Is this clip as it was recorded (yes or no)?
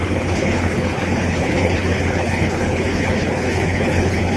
no